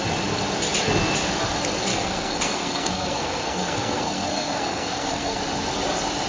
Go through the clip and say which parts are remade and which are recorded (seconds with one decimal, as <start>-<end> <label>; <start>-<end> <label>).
0.0-1.9 recorded; 1.9-5.4 remade; 5.4-6.3 recorded